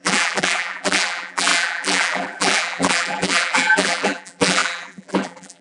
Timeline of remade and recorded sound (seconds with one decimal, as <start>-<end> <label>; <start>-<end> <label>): 0.0-5.6 remade